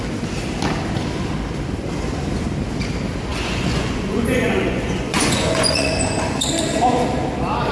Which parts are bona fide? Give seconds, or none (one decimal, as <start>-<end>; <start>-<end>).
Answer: 0.0-3.3; 6.2-7.7